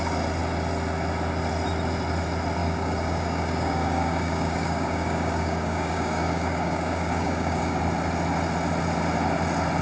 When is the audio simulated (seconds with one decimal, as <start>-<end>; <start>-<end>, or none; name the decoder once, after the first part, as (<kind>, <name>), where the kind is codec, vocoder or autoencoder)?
2.6-7.8 (codec, DAC)